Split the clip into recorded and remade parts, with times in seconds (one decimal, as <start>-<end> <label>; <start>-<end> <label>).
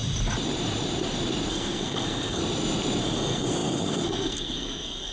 0.0-1.5 recorded; 1.5-2.4 remade; 2.4-3.0 recorded; 3.0-5.1 remade